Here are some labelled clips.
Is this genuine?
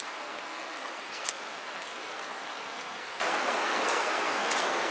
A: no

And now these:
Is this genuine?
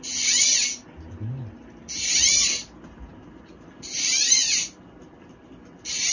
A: yes